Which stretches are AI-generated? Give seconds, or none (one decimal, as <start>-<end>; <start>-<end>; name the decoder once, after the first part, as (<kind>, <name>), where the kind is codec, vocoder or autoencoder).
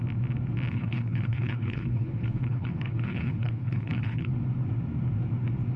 0.7-4.3 (codec, HILCodec)